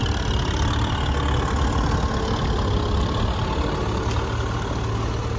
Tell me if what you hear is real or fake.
real